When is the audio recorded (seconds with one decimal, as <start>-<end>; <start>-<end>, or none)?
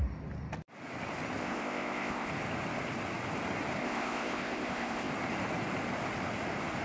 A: 0.0-1.4; 2.3-3.8; 5.1-6.8